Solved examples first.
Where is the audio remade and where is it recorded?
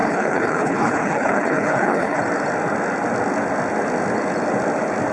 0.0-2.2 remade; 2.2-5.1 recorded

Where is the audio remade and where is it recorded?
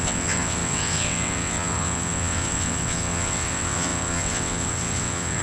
0.0-5.4 remade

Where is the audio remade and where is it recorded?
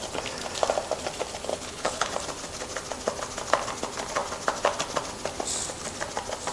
0.0-1.5 recorded; 1.5-2.1 remade; 2.1-6.5 recorded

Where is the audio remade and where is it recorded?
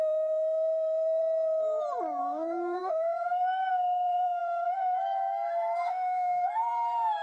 0.0-1.2 remade; 1.2-2.2 recorded; 2.2-7.2 remade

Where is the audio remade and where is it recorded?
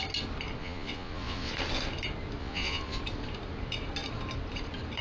0.0-0.6 recorded; 0.6-1.5 remade; 1.5-2.4 recorded; 2.4-3.0 remade; 3.0-5.0 recorded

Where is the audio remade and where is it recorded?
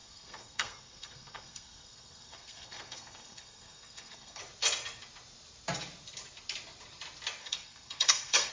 0.0-4.4 remade; 4.4-7.4 recorded; 7.4-8.5 remade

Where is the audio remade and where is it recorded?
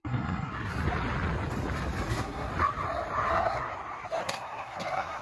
0.0-0.7 remade; 0.7-2.1 recorded; 2.1-2.5 remade; 2.5-3.3 recorded; 3.3-3.7 remade; 3.7-4.2 recorded; 4.2-5.2 remade